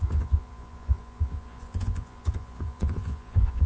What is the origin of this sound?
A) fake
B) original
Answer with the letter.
A